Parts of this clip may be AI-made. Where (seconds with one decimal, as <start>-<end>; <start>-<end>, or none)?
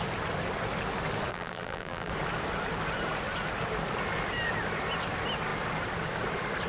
1.3-2.1